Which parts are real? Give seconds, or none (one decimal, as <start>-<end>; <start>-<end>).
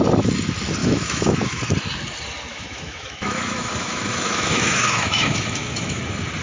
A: 0.0-0.8; 1.6-2.5; 6.0-6.4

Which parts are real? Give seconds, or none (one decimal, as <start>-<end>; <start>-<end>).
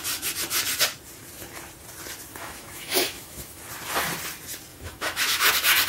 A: 0.0-2.3; 3.6-4.7; 5.5-5.9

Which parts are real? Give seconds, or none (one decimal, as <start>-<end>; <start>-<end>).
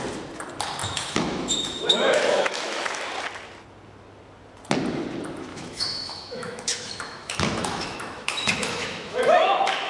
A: 0.0-0.8; 2.9-5.5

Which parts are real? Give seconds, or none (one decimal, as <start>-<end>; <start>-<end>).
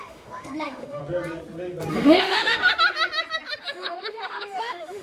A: 1.0-1.9; 2.6-3.6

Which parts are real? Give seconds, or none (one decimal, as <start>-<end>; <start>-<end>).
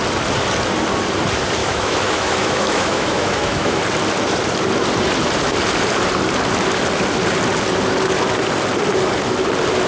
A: 0.0-1.6; 3.8-9.9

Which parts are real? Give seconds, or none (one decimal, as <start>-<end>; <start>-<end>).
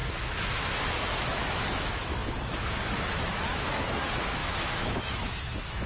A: none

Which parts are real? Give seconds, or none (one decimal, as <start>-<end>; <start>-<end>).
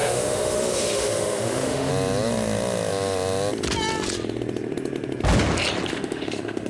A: 1.9-5.9